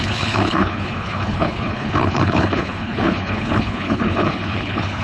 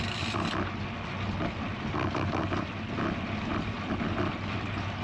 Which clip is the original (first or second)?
second